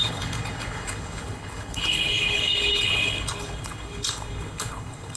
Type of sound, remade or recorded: remade